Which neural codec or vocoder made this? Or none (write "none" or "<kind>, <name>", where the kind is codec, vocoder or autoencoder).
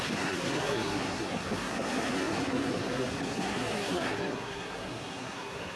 codec, SNAC